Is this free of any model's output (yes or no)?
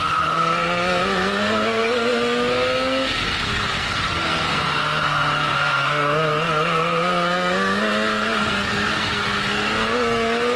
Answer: no